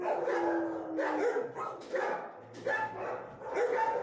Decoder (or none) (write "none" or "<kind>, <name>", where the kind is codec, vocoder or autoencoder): none